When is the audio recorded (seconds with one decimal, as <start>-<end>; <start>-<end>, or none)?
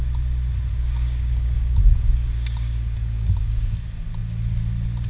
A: 0.0-0.7; 3.8-5.1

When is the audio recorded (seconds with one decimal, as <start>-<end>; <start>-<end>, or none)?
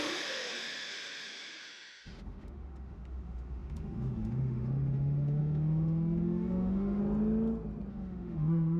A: 7.0-7.9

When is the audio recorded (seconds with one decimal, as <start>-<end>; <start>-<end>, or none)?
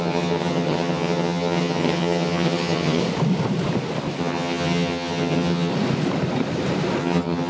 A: 3.0-4.2; 5.7-7.0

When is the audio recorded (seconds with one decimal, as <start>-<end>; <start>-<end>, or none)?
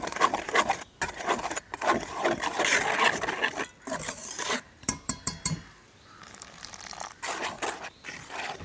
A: 0.0-4.2; 6.7-8.6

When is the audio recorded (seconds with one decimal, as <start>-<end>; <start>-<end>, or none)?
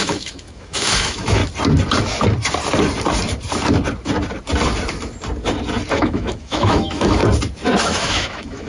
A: 1.4-5.9; 7.2-7.8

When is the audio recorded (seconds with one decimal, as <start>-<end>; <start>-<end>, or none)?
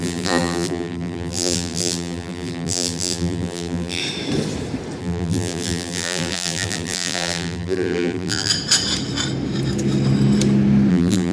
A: 4.0-5.0; 8.5-10.9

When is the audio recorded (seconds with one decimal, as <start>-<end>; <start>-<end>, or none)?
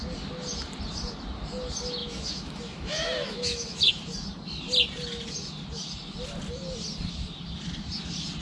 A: 0.0-2.0; 3.9-8.4